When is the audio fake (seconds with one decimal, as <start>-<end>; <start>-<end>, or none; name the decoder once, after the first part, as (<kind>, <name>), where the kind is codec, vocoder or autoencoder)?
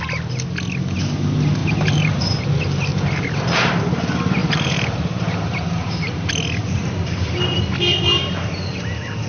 1.6-2.4 (vocoder, BigVGAN v2); 2.9-3.6; 4.4-6.3